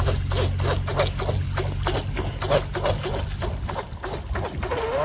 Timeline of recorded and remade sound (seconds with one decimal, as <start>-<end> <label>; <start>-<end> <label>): 0.0-5.0 recorded